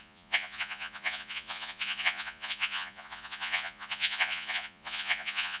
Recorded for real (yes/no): no